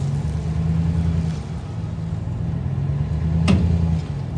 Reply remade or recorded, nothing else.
recorded